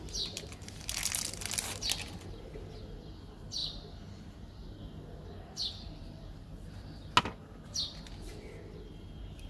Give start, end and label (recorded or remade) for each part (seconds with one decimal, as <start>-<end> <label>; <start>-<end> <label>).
0.0-9.5 recorded